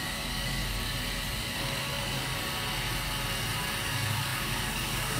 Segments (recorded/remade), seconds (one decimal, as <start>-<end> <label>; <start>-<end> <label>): 0.0-0.6 remade; 0.6-1.4 recorded; 1.4-2.3 remade; 2.3-3.8 recorded; 3.8-5.2 remade